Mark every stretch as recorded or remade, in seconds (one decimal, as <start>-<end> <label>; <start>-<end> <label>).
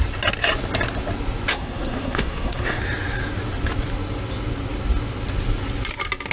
0.0-1.5 recorded; 1.5-2.8 remade; 2.8-6.3 recorded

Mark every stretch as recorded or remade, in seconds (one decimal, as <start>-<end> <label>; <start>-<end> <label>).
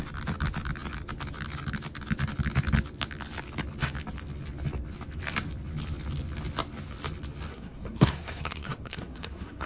0.0-7.5 recorded; 7.5-9.7 remade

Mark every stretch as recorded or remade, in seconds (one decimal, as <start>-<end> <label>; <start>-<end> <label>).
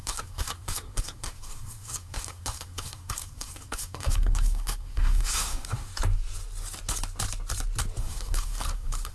0.0-5.9 remade; 5.9-8.0 recorded; 8.0-9.1 remade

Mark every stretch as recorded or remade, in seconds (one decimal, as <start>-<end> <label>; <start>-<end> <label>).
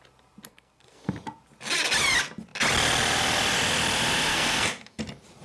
0.0-0.5 recorded; 0.5-1.1 remade; 1.1-4.3 recorded; 4.3-5.0 remade; 5.0-5.4 recorded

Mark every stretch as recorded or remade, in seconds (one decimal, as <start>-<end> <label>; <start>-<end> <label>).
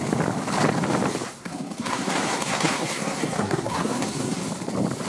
0.0-1.3 recorded; 1.3-4.4 remade; 4.4-5.1 recorded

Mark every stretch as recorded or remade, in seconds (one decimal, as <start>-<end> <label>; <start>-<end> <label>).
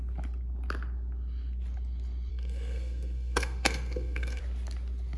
0.0-2.3 recorded; 2.3-4.4 remade; 4.4-5.2 recorded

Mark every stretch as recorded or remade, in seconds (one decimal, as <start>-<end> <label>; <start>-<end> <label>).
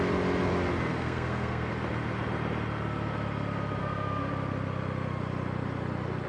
0.0-0.9 recorded; 0.9-1.7 remade; 1.7-3.8 recorded; 3.8-4.3 remade; 4.3-6.3 recorded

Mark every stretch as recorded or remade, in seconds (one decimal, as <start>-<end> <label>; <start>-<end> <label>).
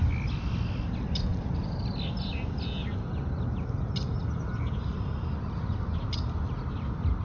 0.0-7.2 recorded